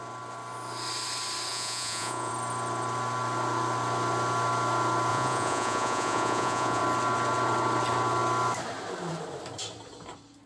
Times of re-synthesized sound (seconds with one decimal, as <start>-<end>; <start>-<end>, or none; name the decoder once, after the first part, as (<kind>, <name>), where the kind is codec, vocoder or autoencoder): 1.5-2.3 (vocoder, Vocos); 5.1-6.8